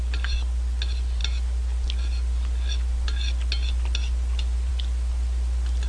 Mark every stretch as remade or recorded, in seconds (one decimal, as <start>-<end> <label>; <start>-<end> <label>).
0.0-5.9 recorded